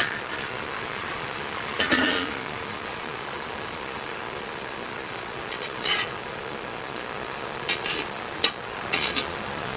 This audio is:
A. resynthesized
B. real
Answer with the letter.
A